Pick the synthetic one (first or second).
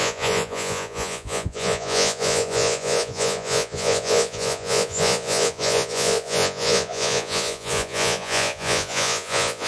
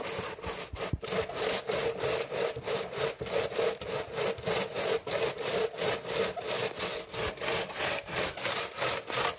first